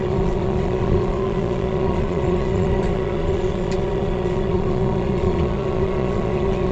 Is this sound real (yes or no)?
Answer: no